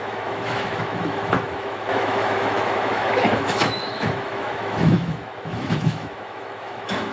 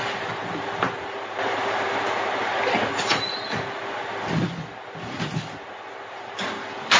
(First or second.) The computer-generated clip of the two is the first